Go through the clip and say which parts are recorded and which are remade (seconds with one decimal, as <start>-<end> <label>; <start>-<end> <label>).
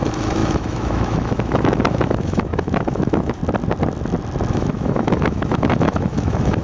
0.0-3.4 remade; 3.4-4.5 recorded; 4.5-6.6 remade